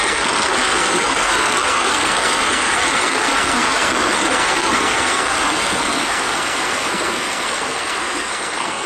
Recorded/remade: remade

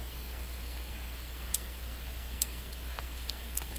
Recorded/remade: remade